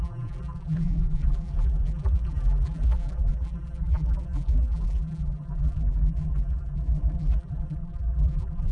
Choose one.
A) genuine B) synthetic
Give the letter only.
B